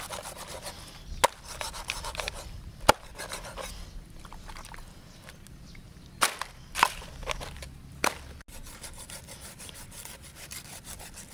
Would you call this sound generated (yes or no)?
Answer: no